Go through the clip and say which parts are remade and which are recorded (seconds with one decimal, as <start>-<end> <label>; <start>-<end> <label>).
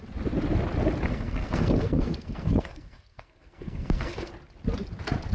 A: 0.0-1.1 recorded; 1.1-4.3 remade; 4.3-5.3 recorded